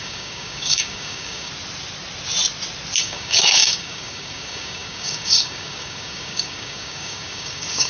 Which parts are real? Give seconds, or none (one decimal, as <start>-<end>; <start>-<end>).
1.5-3.0